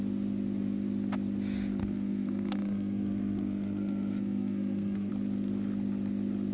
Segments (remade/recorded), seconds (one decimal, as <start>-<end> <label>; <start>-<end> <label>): 0.0-1.8 recorded; 1.8-5.1 remade; 5.1-6.5 recorded